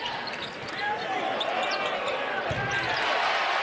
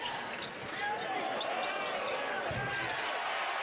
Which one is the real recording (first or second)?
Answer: second